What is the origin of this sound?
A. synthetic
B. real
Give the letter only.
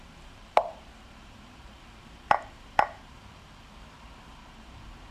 A